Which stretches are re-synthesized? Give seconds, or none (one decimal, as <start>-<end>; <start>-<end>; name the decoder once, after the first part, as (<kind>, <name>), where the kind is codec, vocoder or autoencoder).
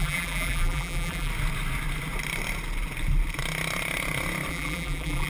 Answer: 0.0-1.3 (vocoder, BigVGAN v2); 4.5-5.3